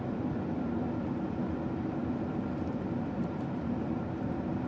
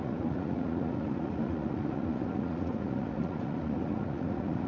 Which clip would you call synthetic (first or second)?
second